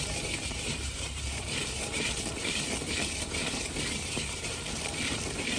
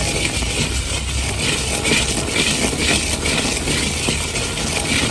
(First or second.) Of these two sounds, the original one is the second